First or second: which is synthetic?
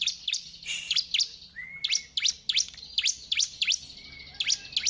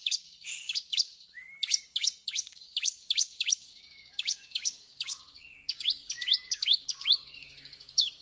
second